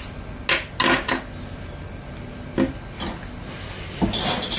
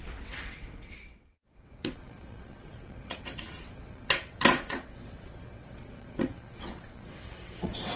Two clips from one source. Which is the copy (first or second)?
second